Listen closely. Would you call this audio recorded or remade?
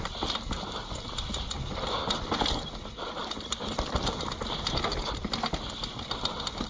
recorded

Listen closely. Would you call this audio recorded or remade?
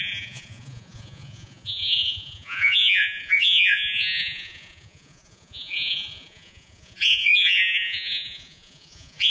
remade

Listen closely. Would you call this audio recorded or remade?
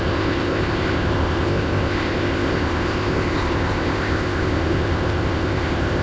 remade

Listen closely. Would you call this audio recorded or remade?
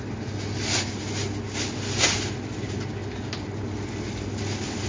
recorded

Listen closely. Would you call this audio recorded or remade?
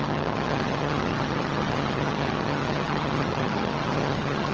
remade